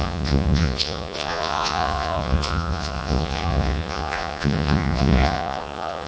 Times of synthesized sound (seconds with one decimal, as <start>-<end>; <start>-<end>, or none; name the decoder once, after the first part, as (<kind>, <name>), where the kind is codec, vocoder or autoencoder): 0.0-6.1 (vocoder, Vocos)